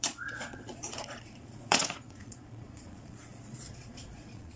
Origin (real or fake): fake